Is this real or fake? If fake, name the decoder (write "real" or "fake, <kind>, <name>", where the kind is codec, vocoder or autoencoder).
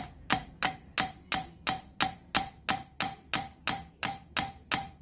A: real